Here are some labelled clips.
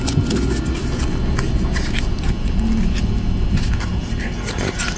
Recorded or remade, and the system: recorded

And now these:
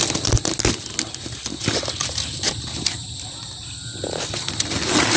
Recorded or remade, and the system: recorded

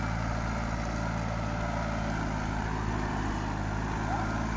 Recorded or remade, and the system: recorded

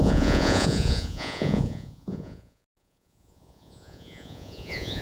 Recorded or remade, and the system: remade, vocoder, Vocos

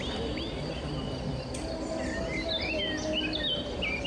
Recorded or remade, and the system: recorded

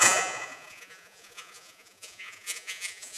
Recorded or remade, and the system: remade, vocoder, Vocos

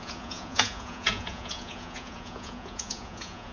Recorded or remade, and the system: remade, vocoder, Vocos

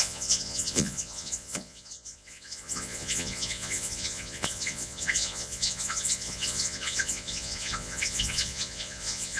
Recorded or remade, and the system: remade, vocoder, Vocos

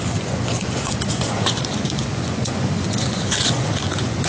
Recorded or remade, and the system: remade, vocoder, Vocos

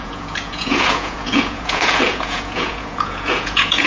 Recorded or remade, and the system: remade, vocoder, Vocos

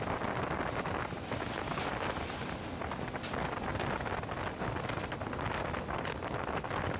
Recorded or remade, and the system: recorded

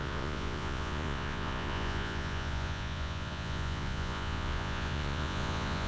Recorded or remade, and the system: remade, vocoder, Vocos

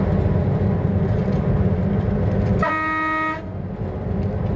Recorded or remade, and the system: recorded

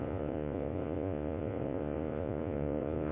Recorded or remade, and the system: remade, vocoder, Vocos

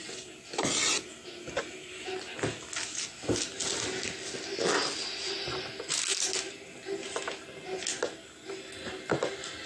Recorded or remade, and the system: recorded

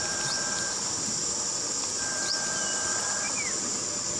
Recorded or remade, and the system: recorded